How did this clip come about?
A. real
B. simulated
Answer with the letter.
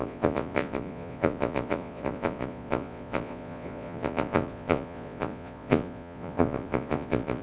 B